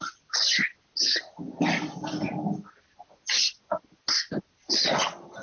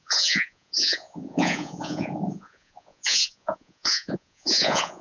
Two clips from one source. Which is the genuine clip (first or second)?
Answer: first